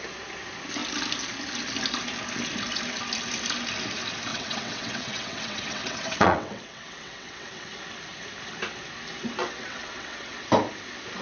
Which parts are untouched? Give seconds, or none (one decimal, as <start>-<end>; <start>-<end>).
0.0-4.3; 7.7-9.4; 10.4-11.2